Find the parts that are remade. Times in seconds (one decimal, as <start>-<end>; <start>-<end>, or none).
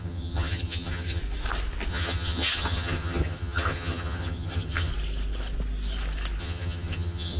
0.0-1.2; 1.9-4.9; 6.4-7.4